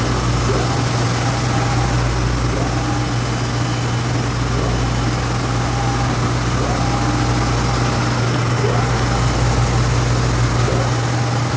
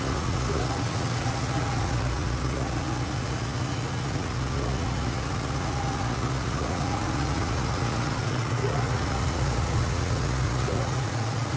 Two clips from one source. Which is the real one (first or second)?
first